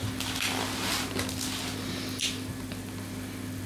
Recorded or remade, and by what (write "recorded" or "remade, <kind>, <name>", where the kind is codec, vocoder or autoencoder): recorded